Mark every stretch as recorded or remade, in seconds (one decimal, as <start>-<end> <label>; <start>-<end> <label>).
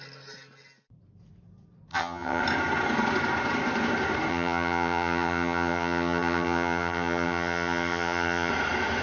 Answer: 0.0-1.9 recorded; 1.9-2.4 remade; 2.4-4.3 recorded; 4.3-8.5 remade; 8.5-9.0 recorded